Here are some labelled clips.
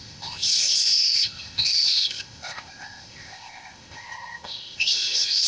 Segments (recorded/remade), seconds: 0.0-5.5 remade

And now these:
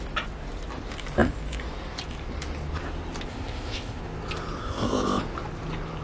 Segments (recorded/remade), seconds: 0.0-3.3 recorded; 3.3-4.0 remade; 4.0-4.6 recorded; 4.6-5.2 remade; 5.2-6.0 recorded